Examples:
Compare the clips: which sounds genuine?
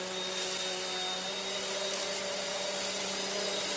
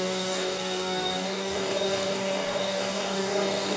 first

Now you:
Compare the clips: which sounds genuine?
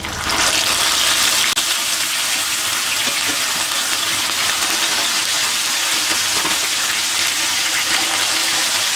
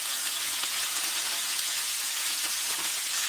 first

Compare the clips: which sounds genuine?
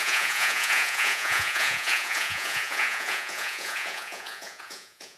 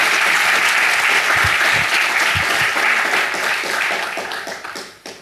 second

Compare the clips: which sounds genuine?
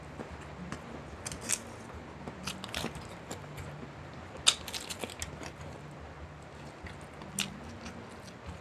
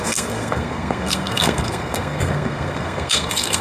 first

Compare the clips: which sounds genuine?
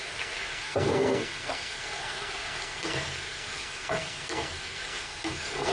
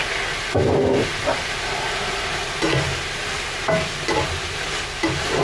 second